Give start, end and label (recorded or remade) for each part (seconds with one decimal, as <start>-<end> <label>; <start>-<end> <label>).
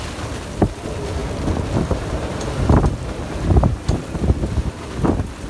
0.0-5.5 recorded